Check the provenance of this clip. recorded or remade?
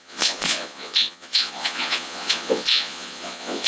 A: remade